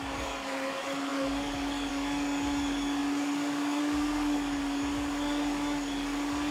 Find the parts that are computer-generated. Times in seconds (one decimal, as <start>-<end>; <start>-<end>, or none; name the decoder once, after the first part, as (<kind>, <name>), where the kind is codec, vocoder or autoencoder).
0.0-6.5 (codec, DAC)